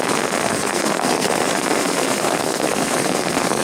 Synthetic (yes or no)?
yes